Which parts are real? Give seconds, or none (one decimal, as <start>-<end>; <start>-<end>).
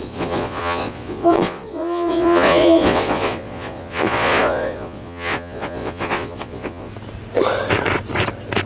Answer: 6.9-8.7